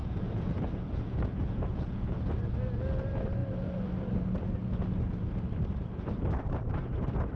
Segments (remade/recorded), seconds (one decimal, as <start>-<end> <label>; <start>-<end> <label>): 0.0-2.5 remade; 2.5-7.4 recorded